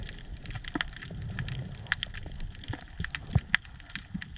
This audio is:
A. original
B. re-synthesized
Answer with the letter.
A